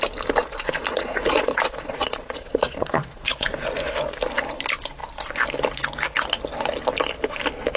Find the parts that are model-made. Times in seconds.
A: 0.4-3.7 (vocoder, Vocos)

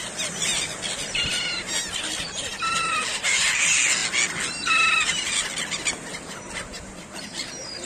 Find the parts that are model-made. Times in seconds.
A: none

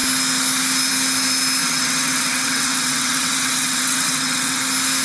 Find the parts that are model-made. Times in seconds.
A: 1.6-4.6 (vocoder, WaveNeXt)

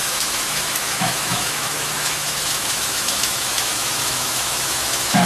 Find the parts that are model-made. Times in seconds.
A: 0.0-5.3 (autoencoder, DAC-VAE)

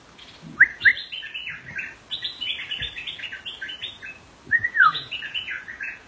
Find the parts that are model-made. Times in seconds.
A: 4.5-6.1 (vocoder, Vocos)

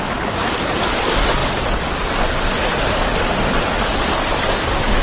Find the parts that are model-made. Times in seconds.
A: none

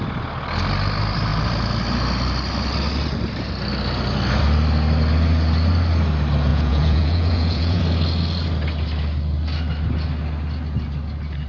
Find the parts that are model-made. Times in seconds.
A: 6.5-7.8 (vocoder, Vocos)

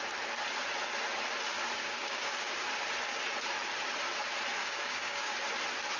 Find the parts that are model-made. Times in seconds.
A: 1.8-2.5 (codec, DAC); 4.6-5.3